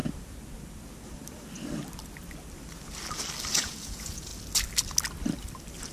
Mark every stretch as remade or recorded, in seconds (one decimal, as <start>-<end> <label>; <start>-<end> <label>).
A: 0.0-3.5 recorded; 3.5-4.3 remade; 4.3-5.9 recorded